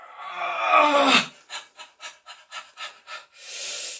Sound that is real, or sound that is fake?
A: real